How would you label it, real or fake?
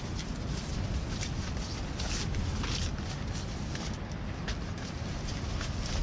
real